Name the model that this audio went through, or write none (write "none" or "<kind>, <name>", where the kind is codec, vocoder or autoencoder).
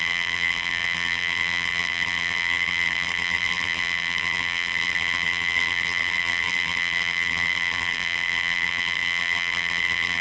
vocoder, BigVGAN v2